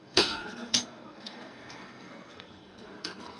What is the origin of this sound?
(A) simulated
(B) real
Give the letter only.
A